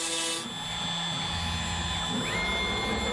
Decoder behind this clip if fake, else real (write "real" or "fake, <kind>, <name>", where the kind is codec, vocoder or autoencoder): real